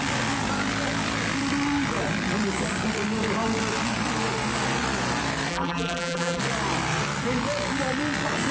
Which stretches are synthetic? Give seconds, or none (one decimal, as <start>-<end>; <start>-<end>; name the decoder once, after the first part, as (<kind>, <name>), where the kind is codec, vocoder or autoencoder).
5.5-6.4 (vocoder, BigVGAN v2)